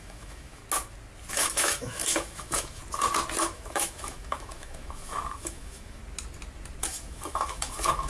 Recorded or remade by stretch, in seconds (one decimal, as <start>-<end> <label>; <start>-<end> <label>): 0.0-0.6 remade; 0.6-1.3 recorded; 1.3-2.8 remade; 2.8-3.4 recorded; 3.4-6.0 remade; 6.0-6.8 recorded; 6.8-8.1 remade

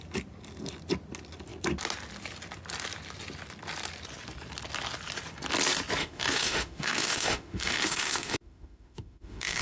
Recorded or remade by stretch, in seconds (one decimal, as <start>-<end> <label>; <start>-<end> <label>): 0.0-6.0 recorded; 6.0-9.6 remade

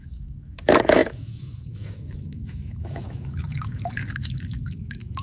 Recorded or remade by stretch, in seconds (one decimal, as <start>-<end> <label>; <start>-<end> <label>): 0.0-5.2 remade